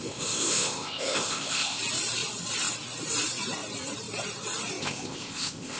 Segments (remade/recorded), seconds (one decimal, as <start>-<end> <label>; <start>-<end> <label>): 0.0-1.8 remade; 1.8-4.8 recorded; 4.8-5.8 remade